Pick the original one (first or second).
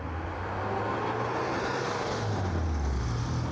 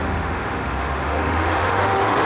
first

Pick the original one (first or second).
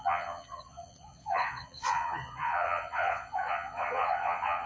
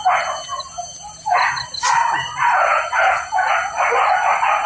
second